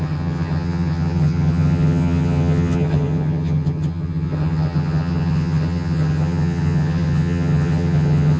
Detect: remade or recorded remade